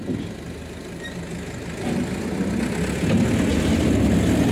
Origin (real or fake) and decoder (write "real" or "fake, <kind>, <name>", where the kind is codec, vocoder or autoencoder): real